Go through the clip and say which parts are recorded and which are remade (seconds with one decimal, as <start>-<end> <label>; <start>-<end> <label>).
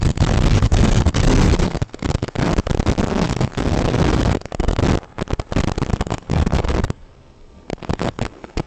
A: 0.0-2.5 remade; 2.5-3.1 recorded; 3.1-4.8 remade; 4.8-5.9 recorded; 5.9-8.7 remade